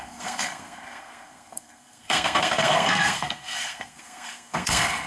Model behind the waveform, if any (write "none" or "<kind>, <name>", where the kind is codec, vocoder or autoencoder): codec, SNAC